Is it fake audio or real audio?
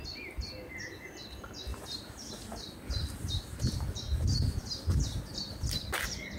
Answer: real